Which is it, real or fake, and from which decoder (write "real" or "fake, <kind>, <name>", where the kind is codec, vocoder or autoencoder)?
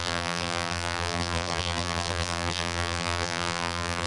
fake, vocoder, BigVGAN v2